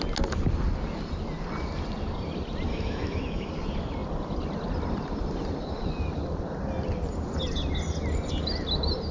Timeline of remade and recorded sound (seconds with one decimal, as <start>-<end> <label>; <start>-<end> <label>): 0.0-2.7 recorded; 2.7-3.5 remade; 3.5-9.1 recorded